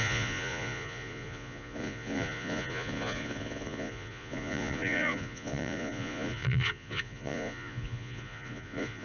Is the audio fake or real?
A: fake